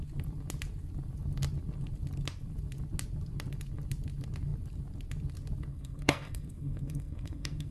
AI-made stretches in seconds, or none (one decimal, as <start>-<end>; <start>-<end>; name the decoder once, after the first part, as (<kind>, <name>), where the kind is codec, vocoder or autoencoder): 5.7-7.7 (codec, SNAC)